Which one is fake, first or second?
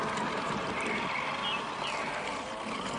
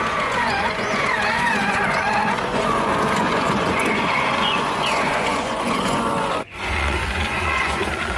second